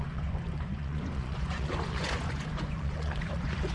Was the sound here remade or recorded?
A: remade